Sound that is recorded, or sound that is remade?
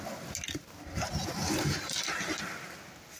recorded